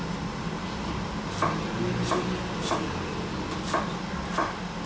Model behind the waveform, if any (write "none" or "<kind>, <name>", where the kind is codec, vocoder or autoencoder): none